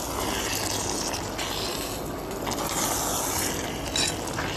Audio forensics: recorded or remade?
recorded